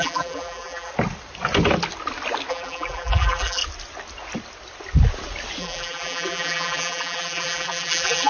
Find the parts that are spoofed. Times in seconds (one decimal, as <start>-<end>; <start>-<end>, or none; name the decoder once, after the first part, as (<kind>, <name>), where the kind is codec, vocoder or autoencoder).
0.0-0.9 (vocoder, BigVGAN v2); 2.5-3.6; 5.6-8.3